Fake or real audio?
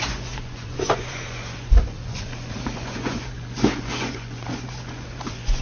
fake